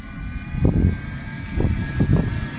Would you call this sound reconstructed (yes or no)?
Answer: no